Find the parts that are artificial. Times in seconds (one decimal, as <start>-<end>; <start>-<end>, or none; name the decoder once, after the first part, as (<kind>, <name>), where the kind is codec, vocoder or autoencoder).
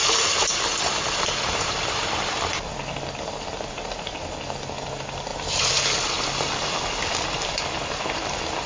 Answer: 0.7-2.7 (vocoder, BigVGAN v2); 5.3-7.6